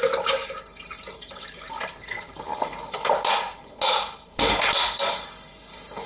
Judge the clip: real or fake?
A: real